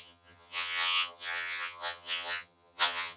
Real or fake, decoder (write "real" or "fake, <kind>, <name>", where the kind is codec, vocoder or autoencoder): fake, vocoder, HiFi-GAN